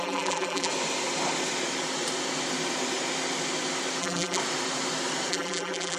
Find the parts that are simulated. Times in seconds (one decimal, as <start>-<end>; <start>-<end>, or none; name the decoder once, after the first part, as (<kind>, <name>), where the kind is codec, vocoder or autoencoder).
0.0-0.7 (vocoder, BigVGAN v2); 4.0-4.4; 5.3-6.0